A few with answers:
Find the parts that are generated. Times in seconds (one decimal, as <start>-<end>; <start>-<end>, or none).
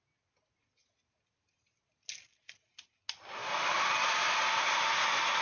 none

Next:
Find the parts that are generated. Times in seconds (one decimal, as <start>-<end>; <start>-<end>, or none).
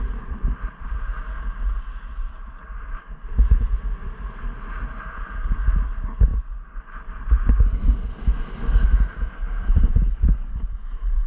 none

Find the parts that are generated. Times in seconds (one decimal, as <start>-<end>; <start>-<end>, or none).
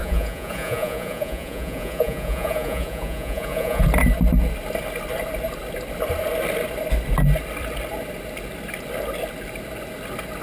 0.0-3.8